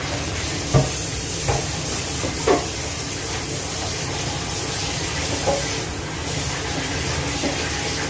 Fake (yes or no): no